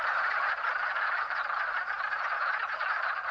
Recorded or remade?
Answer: recorded